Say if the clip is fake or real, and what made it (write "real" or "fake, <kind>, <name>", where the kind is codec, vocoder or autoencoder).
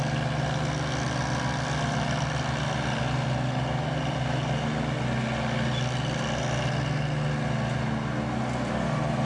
real